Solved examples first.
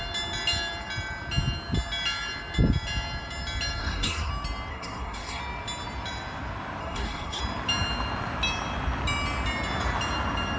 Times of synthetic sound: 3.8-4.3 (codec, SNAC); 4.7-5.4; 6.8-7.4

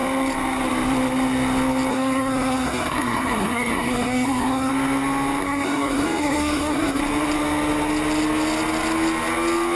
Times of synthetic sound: 1.9-4.7 (codec, SNAC); 5.4-7.0